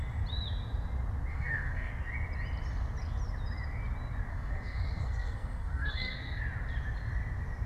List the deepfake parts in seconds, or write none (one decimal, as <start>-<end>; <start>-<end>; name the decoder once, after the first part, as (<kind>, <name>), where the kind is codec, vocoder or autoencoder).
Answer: 1.3-1.9 (codec, SNAC); 4.3-6.4